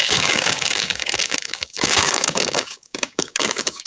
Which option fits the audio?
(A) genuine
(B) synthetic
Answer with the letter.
B